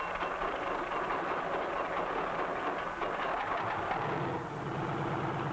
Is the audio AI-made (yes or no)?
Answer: no